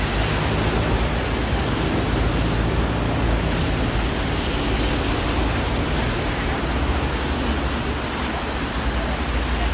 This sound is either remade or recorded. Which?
recorded